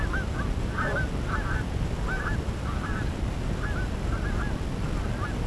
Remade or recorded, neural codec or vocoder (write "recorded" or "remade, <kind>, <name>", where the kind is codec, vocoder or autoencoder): recorded